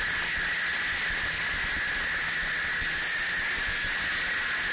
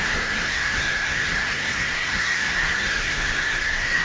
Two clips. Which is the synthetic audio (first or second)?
second